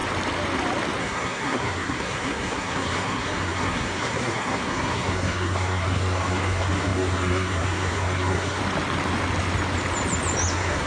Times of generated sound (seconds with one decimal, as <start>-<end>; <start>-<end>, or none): 1.0-8.6; 10.5-10.9